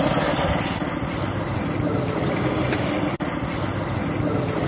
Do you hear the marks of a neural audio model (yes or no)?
no